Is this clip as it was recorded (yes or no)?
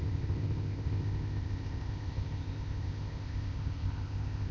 no